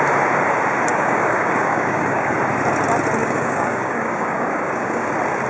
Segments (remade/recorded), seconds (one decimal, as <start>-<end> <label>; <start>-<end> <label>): 0.0-0.9 recorded; 0.9-2.3 remade; 2.3-3.2 recorded; 3.2-5.1 remade; 5.1-5.5 recorded